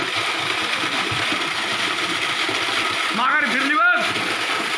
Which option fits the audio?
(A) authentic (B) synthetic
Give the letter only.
A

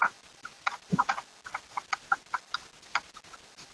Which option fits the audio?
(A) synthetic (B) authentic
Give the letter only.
B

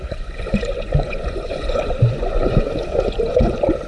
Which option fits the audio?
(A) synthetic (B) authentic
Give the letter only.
A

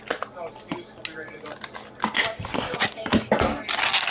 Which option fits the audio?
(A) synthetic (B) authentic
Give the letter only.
B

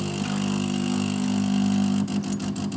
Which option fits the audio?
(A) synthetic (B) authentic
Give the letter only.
B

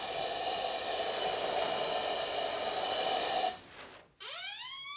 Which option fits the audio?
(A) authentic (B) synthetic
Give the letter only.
A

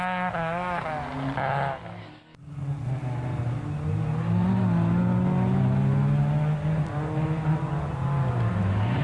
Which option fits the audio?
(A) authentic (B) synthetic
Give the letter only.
A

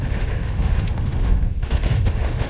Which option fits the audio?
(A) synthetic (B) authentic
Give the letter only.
A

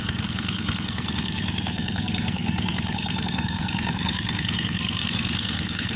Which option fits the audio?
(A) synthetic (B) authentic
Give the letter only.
A